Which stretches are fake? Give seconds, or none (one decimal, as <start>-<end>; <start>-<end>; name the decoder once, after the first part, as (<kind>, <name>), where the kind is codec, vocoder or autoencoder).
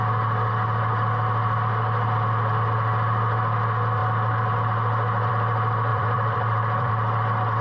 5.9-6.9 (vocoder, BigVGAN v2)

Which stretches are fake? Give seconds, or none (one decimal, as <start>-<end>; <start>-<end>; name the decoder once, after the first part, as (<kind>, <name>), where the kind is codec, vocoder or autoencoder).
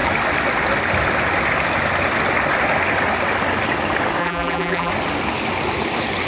4.2-4.9 (vocoder, BigVGAN v2)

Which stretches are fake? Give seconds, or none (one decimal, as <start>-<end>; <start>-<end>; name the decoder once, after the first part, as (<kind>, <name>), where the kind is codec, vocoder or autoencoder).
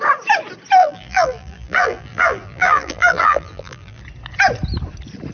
0.8-4.0 (vocoder, BigVGAN v2)